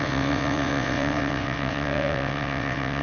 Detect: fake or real fake